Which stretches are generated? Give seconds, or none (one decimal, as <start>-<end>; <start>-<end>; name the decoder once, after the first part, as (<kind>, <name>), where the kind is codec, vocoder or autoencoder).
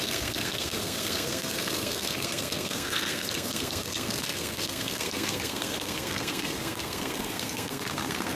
0.0-8.4 (codec, SNAC)